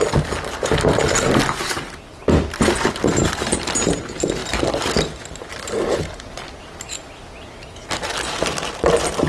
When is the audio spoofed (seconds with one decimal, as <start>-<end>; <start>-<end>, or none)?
none